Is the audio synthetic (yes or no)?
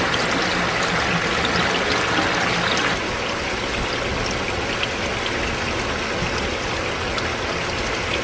no